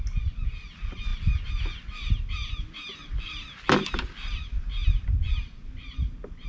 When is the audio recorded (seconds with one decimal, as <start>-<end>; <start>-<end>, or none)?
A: 0.0-6.5